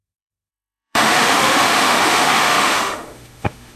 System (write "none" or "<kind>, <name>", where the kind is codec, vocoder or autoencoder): autoencoder, DAC-VAE